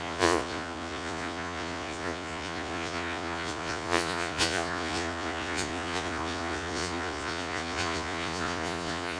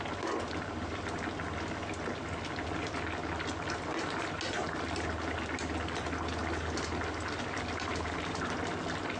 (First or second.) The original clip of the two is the second